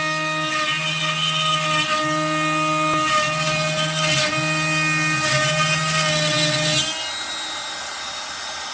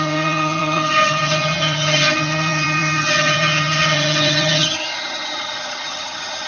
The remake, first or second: second